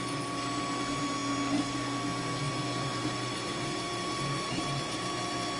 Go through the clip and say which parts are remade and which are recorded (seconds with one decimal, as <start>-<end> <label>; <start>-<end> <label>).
0.0-2.9 recorded; 2.9-5.1 remade; 5.1-5.6 recorded